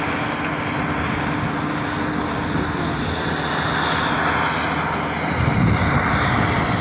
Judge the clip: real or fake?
real